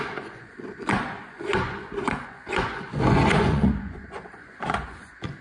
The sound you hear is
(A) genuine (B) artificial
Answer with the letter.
B